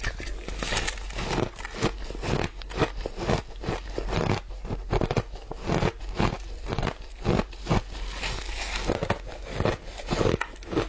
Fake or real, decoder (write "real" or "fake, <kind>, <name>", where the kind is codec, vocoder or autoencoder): real